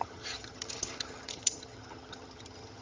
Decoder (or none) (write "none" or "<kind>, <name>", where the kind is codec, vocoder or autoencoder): vocoder, HiFi-GAN